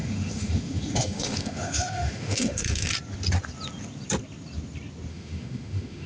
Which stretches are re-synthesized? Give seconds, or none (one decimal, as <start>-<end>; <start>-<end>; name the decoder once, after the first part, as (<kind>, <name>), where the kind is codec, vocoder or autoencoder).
0.0-2.9 (autoencoder, DAC-VAE); 5.1-6.1